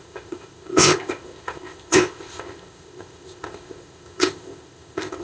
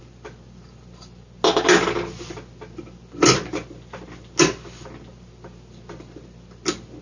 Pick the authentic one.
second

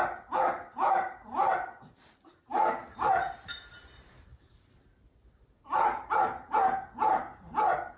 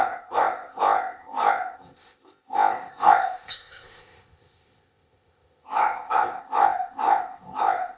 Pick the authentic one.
first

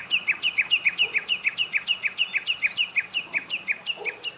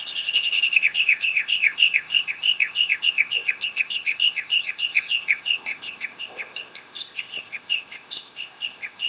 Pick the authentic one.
first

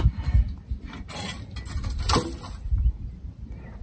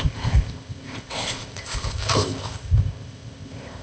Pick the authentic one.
first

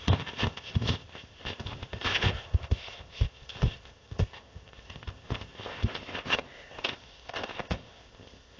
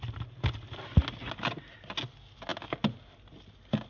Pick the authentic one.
second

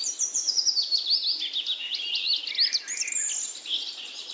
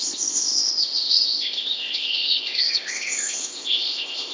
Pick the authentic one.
first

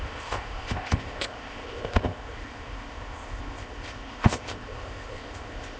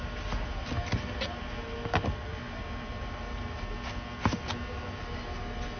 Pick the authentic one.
second